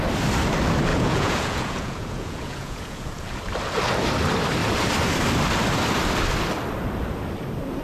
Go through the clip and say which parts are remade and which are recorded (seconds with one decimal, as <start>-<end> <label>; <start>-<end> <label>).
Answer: 0.0-0.9 recorded; 0.9-3.4 remade; 3.4-7.8 recorded